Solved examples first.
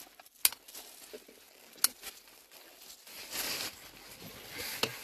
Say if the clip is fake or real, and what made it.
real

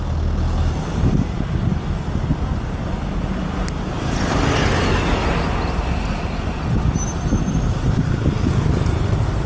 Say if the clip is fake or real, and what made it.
real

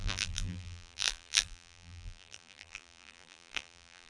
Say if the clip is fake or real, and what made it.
fake, vocoder, BigVGAN v2